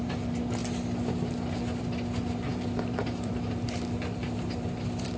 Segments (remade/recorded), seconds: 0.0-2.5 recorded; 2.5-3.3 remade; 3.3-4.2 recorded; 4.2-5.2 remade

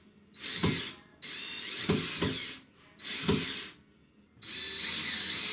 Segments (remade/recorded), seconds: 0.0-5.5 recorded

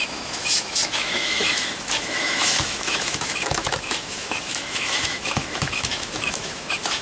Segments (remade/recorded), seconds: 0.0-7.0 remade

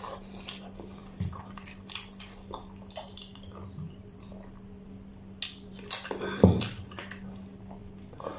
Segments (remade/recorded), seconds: 0.0-5.1 remade; 5.1-5.7 recorded; 5.7-7.8 remade; 7.8-8.4 recorded